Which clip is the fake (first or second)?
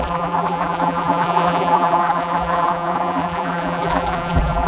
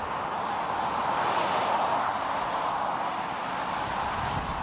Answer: first